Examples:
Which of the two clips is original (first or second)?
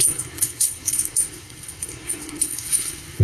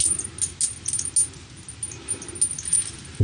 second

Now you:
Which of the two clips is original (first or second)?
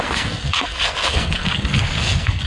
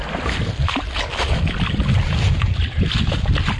second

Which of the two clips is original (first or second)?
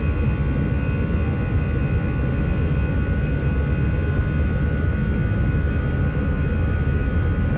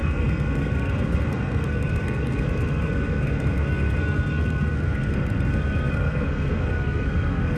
first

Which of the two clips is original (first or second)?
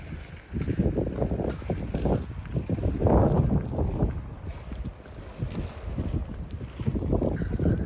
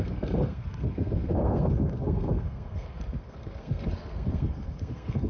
first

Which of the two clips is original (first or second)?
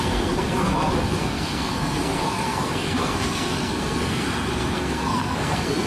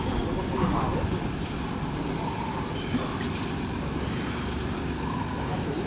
second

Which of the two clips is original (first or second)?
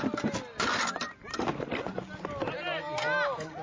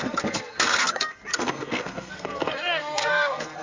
first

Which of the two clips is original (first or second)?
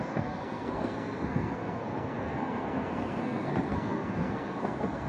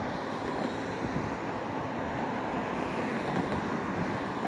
second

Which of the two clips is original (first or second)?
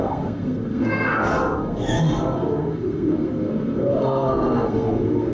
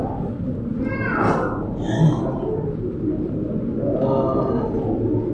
second